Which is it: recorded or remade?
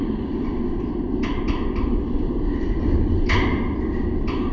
remade